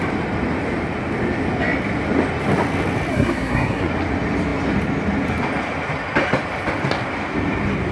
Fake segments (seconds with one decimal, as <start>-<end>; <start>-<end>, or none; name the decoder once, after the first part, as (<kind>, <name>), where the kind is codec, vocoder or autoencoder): 3.1-3.9 (codec, SNAC)